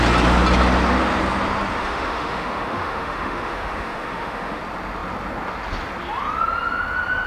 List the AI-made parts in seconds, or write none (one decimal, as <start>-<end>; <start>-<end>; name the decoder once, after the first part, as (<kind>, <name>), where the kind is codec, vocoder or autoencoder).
1.8-4.6 (autoencoder, DAC-VAE)